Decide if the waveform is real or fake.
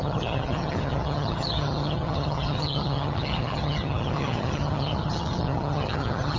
fake